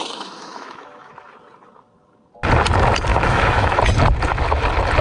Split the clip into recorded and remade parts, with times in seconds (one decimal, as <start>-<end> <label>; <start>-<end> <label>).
0.0-1.1 remade; 1.1-3.1 recorded; 3.1-3.8 remade; 3.8-5.0 recorded